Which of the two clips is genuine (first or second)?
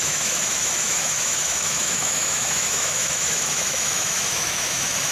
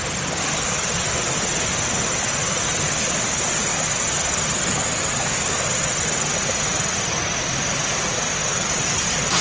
second